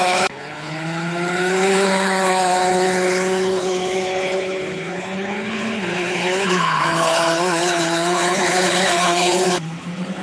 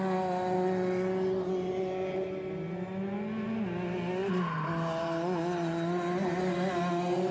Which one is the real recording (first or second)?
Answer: second